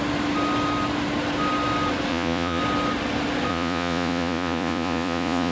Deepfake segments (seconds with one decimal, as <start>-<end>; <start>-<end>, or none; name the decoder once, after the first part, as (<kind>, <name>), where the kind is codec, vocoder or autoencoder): 2.1-2.6 (vocoder, Vocos); 3.5-5.5